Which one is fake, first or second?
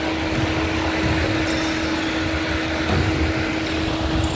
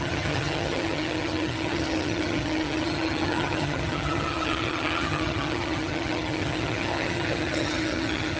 second